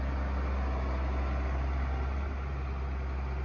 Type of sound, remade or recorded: recorded